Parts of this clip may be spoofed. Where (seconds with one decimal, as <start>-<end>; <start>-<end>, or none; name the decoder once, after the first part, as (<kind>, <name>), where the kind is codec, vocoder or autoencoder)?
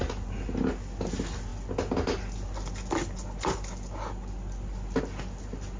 none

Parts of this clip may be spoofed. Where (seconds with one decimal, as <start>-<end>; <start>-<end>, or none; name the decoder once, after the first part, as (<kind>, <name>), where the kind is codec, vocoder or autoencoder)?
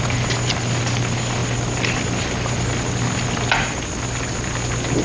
none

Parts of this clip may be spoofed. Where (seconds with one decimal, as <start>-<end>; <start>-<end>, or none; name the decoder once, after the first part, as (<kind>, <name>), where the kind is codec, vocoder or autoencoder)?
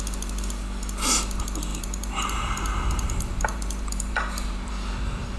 1.7-4.7 (vocoder, BigVGAN v2)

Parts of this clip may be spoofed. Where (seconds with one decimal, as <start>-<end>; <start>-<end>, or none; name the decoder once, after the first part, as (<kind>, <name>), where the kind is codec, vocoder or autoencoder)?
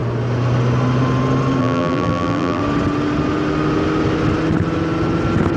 1.6-2.6 (vocoder, BigVGAN v2)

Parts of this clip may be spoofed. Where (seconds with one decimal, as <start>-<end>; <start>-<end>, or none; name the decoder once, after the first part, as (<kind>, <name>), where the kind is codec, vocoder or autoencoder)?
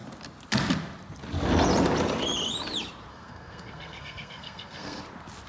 3.1-5.0 (codec, SNAC)